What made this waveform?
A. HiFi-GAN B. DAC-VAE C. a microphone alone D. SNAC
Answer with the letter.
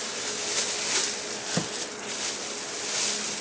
C